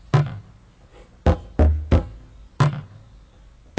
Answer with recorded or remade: recorded